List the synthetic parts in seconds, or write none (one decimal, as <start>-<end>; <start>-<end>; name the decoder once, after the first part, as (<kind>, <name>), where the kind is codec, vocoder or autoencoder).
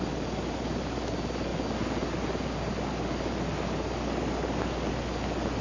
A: none